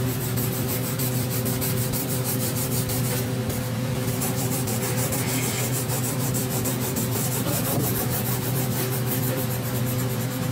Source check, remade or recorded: remade